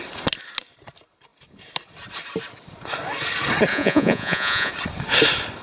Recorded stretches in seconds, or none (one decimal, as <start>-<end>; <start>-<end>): 0.0-3.7; 4.7-5.6